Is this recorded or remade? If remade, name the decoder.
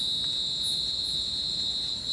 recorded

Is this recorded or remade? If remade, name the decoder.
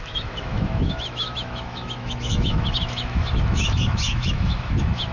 remade, autoencoder, DAC-VAE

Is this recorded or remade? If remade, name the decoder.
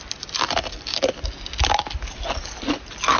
recorded